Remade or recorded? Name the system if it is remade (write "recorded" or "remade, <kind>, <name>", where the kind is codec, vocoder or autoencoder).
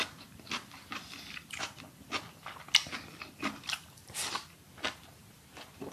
remade, vocoder, BigVGAN v2